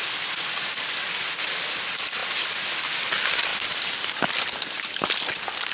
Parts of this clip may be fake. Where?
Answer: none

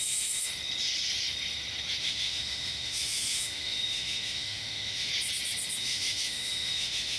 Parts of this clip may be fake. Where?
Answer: 0.0-0.5; 2.0-5.1; 5.8-7.2

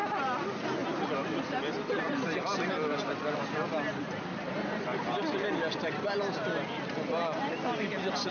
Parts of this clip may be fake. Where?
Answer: none